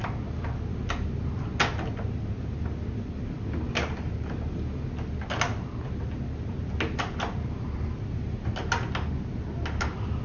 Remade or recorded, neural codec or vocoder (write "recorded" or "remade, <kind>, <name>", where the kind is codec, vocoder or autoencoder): recorded